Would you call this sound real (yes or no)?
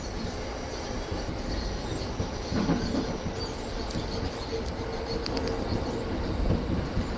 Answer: yes